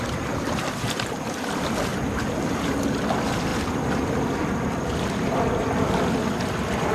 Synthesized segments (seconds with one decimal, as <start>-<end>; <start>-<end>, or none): none